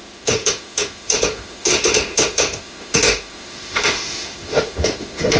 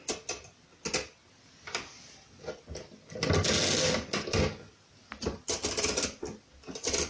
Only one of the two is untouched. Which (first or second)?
second